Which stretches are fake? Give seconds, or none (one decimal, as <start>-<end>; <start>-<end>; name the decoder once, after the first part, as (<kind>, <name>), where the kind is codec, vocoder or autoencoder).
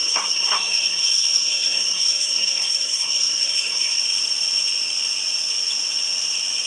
0.0-4.0 (codec, SNAC)